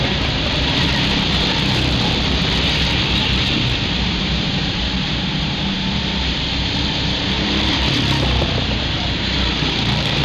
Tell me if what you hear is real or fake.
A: fake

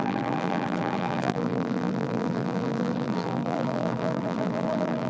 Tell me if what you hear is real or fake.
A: fake